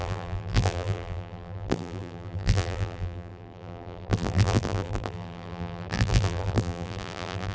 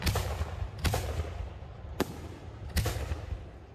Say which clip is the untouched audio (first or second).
second